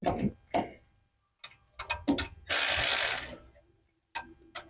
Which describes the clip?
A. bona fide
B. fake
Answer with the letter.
A